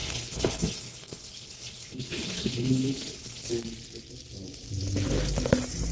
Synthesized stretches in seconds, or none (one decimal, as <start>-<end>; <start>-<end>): 0.0-3.5